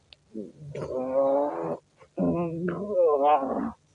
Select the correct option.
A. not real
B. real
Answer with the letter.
B